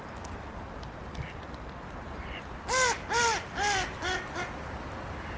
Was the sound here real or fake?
real